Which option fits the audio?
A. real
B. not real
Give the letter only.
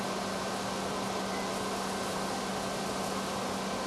A